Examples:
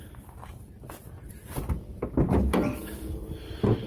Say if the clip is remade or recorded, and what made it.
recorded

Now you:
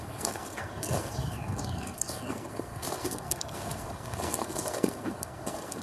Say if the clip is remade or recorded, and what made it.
remade, codec, SNAC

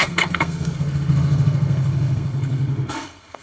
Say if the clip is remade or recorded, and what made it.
remade, codec, SNAC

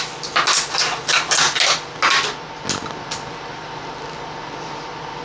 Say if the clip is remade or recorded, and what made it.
recorded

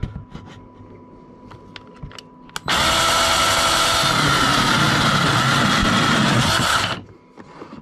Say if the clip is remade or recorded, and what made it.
recorded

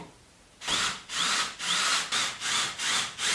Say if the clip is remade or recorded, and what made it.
recorded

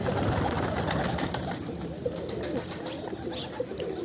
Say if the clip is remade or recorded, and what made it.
remade, vocoder, BigVGAN v2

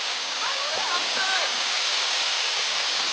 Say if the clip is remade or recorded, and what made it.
remade, codec, DAC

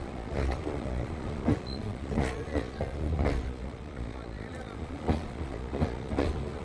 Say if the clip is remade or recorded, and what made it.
remade, vocoder, Vocos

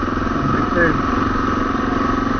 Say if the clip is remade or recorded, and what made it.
recorded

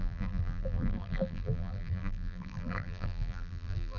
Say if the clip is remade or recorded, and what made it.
remade, vocoder, BigVGAN v2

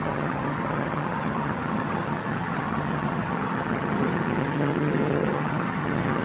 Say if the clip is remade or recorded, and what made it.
remade, vocoder, HiFi-GAN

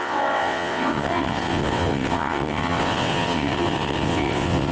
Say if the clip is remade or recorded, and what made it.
remade, vocoder, WaveNeXt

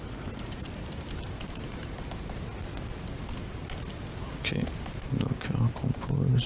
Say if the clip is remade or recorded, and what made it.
recorded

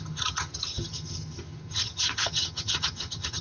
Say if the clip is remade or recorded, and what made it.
remade, vocoder, HiFi-GAN